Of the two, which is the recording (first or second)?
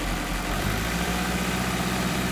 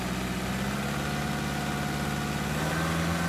second